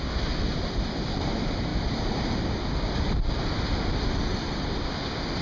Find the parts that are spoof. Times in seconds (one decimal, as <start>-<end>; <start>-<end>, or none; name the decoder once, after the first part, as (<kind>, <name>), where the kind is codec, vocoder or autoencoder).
none

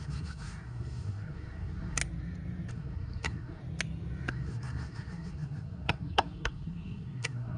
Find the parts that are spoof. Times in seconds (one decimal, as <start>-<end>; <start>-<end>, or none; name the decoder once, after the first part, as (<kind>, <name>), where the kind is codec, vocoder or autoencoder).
0.0-2.0 (codec, SNAC); 2.7-3.6; 4.3-7.6